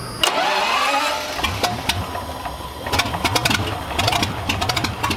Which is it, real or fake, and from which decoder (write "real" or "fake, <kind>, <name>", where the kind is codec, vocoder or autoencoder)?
real